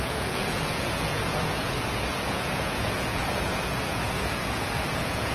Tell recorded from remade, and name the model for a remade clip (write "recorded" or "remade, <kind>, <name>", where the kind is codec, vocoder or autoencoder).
remade, vocoder, Vocos